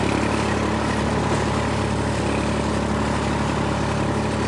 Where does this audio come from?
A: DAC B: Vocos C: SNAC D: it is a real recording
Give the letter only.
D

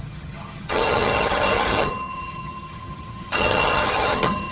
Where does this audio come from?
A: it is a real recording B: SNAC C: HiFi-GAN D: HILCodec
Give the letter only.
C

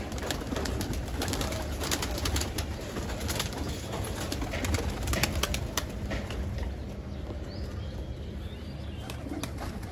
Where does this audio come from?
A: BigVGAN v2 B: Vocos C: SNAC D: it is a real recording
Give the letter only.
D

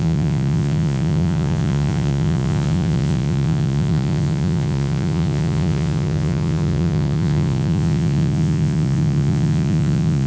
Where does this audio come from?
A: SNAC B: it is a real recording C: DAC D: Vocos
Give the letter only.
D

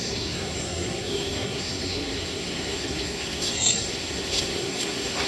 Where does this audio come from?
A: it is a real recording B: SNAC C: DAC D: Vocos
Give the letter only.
B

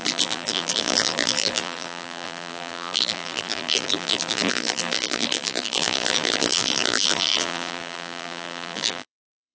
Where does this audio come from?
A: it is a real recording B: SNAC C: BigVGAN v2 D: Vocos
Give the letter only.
C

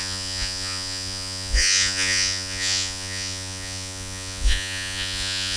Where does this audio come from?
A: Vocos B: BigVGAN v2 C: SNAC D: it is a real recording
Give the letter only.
A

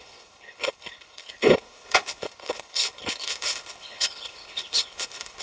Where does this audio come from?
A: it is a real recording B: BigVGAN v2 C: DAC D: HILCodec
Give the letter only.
D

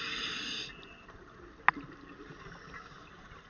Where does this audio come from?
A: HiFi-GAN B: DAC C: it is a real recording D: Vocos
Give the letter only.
C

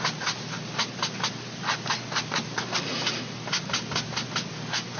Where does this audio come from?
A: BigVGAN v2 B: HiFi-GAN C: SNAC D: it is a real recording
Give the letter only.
D